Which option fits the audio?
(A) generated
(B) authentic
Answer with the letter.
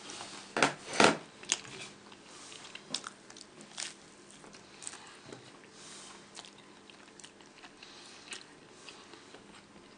B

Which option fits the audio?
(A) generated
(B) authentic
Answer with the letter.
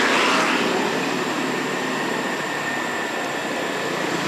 B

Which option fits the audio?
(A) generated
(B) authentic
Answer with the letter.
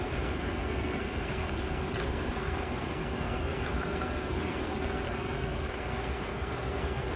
A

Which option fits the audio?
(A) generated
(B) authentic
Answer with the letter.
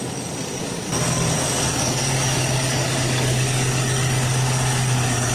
A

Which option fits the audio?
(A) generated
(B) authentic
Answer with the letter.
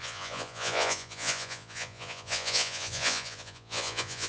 A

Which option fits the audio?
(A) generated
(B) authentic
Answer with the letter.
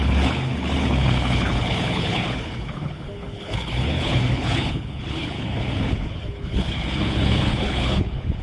A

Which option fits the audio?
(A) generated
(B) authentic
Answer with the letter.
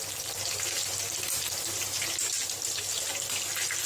B